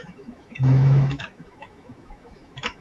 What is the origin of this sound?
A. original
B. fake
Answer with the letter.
B